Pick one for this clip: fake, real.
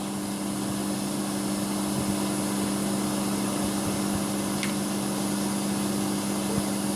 real